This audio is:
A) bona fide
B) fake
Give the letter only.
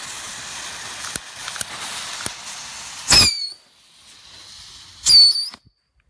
A